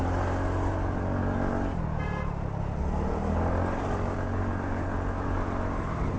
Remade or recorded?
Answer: recorded